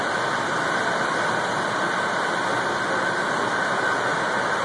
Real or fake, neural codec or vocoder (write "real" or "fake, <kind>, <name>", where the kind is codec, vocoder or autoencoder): real